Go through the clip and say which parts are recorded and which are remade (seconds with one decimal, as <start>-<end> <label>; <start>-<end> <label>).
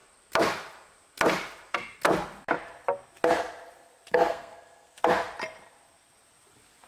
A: 0.0-4.1 recorded; 4.1-5.0 remade; 5.0-6.9 recorded